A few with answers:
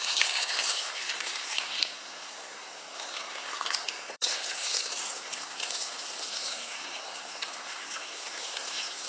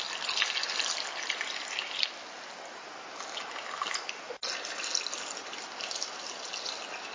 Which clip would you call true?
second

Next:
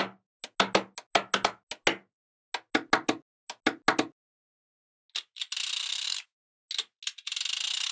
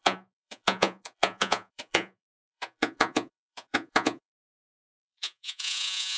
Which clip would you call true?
first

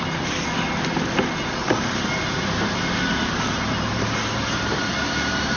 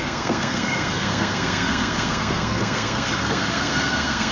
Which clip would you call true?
first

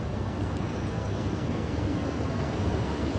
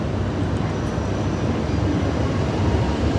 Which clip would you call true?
second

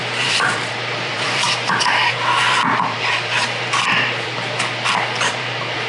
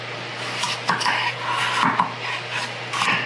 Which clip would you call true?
second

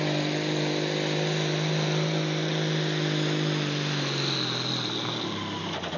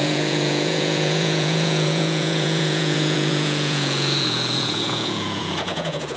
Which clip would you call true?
first